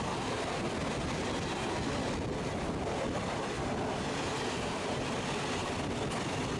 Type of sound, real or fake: real